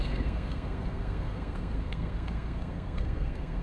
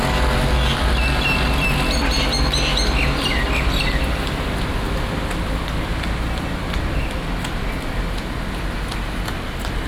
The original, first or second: second